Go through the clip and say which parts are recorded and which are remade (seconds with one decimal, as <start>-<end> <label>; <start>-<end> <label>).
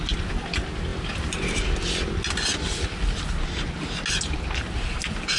0.0-5.4 recorded